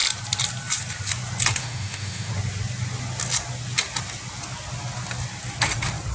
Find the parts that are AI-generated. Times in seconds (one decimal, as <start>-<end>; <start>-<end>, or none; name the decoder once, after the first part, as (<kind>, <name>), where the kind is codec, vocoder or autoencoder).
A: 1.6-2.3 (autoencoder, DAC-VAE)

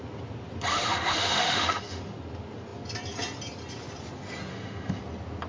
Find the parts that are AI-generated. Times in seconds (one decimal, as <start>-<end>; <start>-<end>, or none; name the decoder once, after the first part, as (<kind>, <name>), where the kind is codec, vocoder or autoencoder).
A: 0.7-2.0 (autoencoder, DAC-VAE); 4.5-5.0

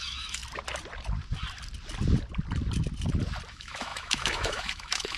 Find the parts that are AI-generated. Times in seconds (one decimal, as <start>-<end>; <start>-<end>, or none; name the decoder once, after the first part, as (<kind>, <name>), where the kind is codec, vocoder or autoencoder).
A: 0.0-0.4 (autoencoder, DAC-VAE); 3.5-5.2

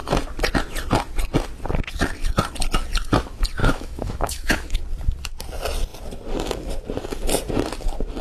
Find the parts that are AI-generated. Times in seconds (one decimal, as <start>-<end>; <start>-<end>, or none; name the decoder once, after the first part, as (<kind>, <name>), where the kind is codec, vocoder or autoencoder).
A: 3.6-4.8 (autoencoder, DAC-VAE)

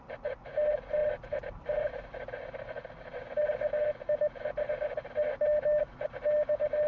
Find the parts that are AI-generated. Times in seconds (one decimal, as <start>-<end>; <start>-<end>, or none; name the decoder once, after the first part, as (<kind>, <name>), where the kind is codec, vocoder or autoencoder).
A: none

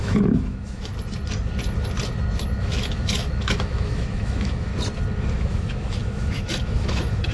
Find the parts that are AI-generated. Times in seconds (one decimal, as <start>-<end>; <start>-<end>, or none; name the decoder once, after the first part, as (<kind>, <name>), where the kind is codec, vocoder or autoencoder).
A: 0.0-0.9 (autoencoder, DAC-VAE); 2.6-4.7; 5.3-7.3

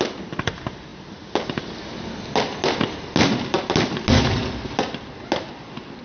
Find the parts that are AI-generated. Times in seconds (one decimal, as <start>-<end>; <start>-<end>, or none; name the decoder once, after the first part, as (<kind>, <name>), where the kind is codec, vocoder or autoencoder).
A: none